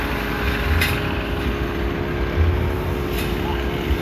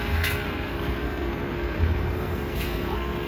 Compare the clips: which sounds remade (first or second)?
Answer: second